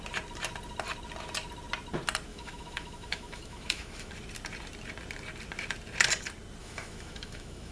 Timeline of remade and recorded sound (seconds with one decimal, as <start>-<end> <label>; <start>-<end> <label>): 0.0-2.3 recorded; 2.3-4.1 remade; 4.1-6.6 recorded; 6.6-7.7 remade